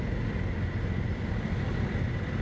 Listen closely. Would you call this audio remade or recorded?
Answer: recorded